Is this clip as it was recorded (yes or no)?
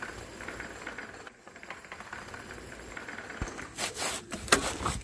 no